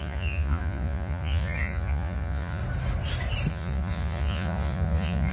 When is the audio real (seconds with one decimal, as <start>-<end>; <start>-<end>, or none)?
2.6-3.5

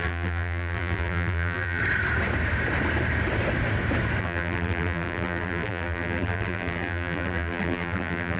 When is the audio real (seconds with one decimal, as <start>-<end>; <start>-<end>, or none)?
1.8-4.2

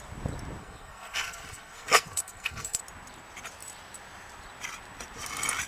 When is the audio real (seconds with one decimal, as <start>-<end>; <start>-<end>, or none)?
0.0-0.6; 2.8-5.7